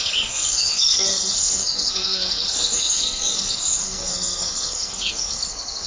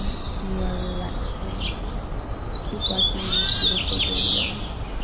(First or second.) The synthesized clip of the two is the first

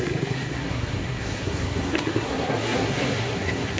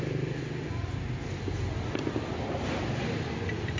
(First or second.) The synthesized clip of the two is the first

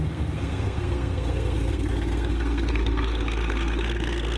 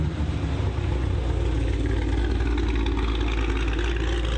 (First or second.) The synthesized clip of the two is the first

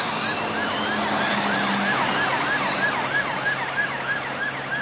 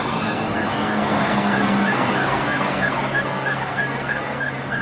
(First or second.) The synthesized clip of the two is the second